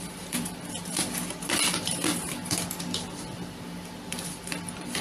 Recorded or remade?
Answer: remade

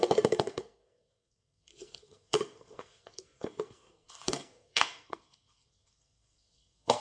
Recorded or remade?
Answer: remade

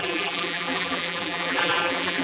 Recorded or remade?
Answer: remade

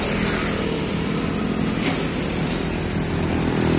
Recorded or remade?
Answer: recorded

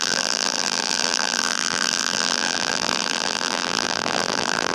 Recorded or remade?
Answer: remade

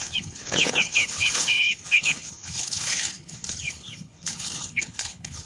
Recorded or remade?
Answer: remade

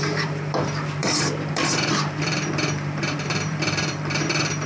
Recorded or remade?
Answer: remade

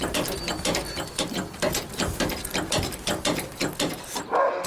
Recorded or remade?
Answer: recorded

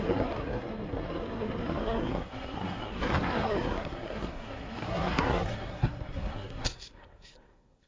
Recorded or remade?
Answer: remade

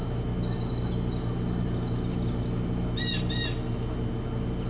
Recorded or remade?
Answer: recorded